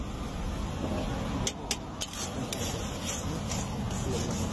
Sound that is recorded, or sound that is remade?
recorded